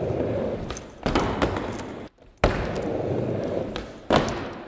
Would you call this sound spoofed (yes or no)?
no